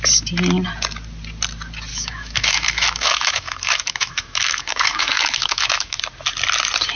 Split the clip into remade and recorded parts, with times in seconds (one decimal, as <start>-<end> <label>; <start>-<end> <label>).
0.0-1.9 recorded; 1.9-6.0 remade; 6.0-6.9 recorded